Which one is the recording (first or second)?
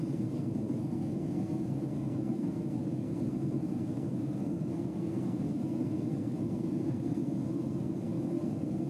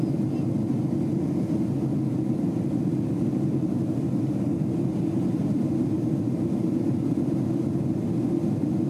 second